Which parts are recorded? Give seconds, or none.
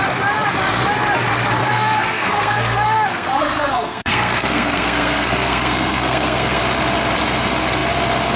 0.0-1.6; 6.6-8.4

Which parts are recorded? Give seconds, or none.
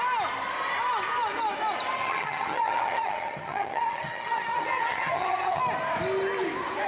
0.0-2.0; 5.6-6.9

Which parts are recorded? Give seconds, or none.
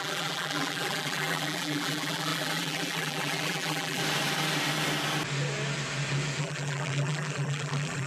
4.0-6.4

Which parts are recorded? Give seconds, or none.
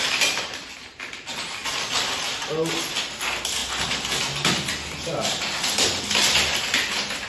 0.0-7.3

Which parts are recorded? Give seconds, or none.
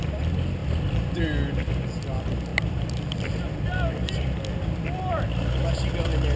0.0-0.6; 1.2-2.5